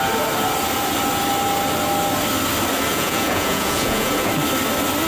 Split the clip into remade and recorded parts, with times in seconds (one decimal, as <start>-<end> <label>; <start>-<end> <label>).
0.0-2.9 recorded; 2.9-4.3 remade; 4.3-5.1 recorded